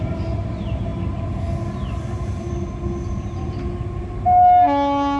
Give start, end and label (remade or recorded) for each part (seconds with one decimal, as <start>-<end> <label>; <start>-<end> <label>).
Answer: 0.0-5.2 recorded